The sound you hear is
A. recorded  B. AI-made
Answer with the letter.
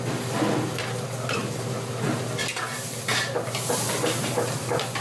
A